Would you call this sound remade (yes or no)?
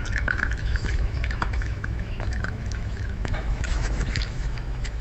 yes